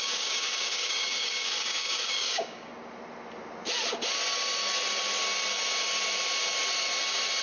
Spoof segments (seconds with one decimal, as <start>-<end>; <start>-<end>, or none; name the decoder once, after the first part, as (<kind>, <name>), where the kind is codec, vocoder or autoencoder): 0.0-2.7 (codec, DAC)

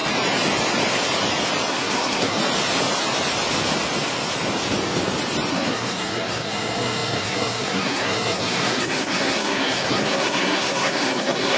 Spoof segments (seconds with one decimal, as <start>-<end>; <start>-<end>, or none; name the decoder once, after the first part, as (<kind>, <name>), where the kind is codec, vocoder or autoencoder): 1.7-2.4 (codec, SNAC); 5.5-11.6

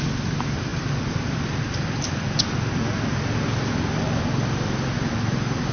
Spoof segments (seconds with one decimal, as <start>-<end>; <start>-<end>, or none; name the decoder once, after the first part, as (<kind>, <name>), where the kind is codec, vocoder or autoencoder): none

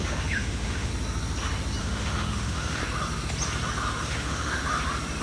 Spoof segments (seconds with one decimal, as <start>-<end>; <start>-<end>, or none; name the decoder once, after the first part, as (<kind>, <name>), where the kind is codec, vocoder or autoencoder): 0.0-0.9 (autoencoder, DAC-VAE); 1.8-2.8; 4.0-4.6

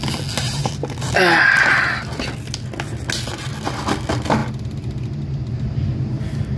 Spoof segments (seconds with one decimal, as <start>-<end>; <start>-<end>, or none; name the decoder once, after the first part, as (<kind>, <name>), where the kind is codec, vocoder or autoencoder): 0.6-1.1 (vocoder, BigVGAN v2); 4.4-5.5

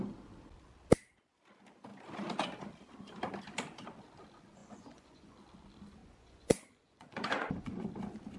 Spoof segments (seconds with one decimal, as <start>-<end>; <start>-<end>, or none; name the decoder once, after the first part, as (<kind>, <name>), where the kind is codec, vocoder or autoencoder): 4.6-5.4 (vocoder, Vocos); 6.0-7.8